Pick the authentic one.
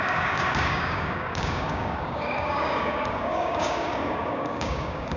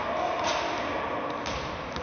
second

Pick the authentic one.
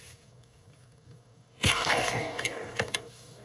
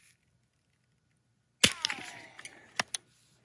second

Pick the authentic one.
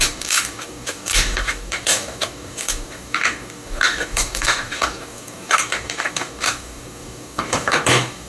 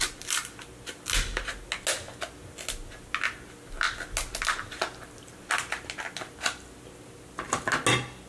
second